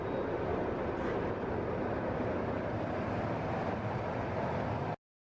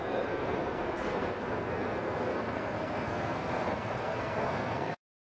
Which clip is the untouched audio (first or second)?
first